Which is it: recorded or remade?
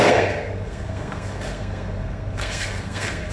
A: remade